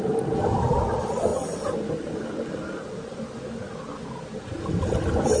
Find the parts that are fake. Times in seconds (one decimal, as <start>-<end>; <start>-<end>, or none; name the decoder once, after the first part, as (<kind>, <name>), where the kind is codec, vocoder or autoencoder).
none